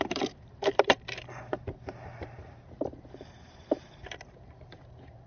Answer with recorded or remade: remade